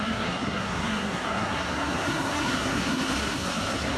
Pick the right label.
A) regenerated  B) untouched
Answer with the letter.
A